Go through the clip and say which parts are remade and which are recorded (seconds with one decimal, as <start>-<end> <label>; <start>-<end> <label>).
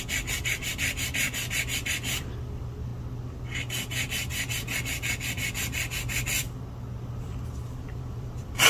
0.0-2.9 remade; 2.9-7.1 recorded; 7.1-8.7 remade